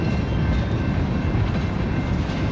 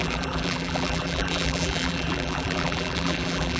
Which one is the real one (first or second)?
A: first